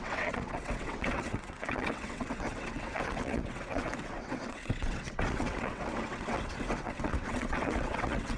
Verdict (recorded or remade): remade